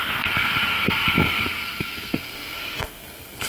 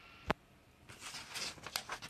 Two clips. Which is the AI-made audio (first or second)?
first